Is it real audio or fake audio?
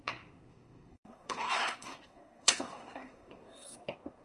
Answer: fake